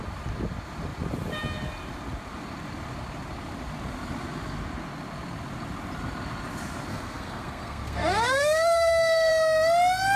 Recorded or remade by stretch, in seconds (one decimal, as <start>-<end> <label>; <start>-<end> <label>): 0.0-6.9 recorded; 6.9-9.3 remade; 9.3-10.2 recorded